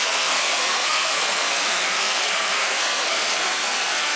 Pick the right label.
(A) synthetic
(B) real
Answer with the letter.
A